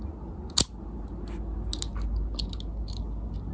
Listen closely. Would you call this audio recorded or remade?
recorded